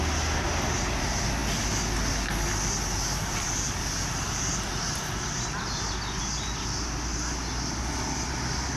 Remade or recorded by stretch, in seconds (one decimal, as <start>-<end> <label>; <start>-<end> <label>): 0.0-8.8 recorded